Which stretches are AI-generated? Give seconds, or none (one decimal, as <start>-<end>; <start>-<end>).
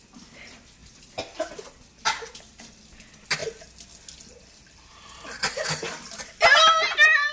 none